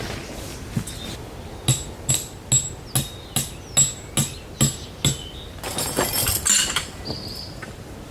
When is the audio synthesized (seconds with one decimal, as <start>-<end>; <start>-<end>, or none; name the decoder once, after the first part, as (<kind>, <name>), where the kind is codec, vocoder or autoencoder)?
none